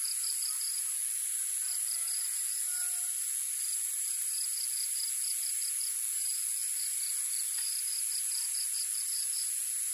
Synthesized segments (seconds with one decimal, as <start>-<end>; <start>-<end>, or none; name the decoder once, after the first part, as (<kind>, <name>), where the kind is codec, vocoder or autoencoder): none